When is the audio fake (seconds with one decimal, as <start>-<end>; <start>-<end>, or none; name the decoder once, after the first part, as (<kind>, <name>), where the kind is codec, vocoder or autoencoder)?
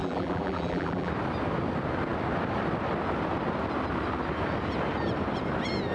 0.0-1.1 (vocoder, BigVGAN v2)